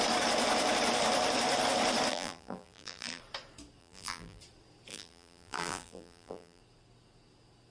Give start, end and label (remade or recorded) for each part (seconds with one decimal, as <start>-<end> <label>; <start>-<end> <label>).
0.0-2.1 recorded; 2.1-3.2 remade; 3.2-3.8 recorded; 3.8-4.4 remade; 4.4-4.9 recorded; 4.9-6.6 remade; 6.6-7.7 recorded